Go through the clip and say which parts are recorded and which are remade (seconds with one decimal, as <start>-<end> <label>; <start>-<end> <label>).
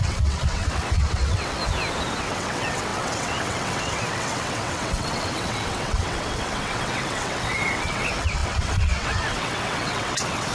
0.0-1.6 remade; 1.6-2.2 recorded; 2.2-10.5 remade